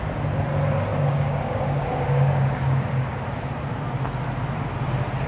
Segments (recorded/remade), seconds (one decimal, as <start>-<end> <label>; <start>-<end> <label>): 0.0-0.9 recorded; 0.9-2.9 remade; 2.9-5.3 recorded